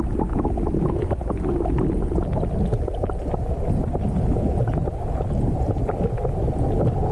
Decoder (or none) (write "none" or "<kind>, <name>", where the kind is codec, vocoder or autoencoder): none